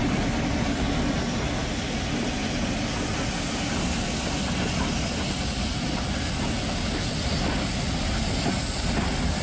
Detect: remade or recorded recorded